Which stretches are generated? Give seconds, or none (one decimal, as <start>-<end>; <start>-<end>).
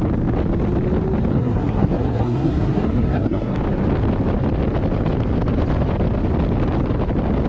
1.3-3.6